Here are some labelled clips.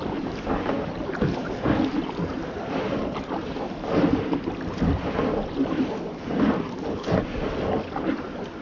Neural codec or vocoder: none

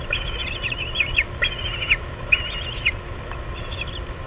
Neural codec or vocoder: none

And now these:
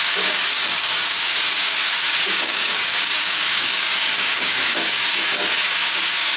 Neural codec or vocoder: codec, DAC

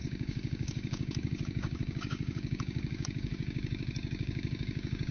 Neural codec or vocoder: codec, DAC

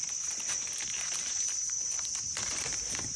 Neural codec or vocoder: none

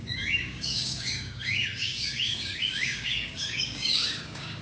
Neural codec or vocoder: codec, DAC